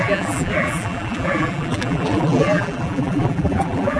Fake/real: fake